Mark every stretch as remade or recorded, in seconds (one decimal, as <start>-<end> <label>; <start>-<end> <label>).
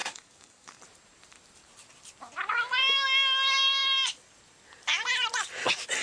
0.0-0.8 remade; 0.8-6.0 recorded